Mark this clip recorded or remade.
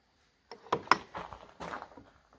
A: recorded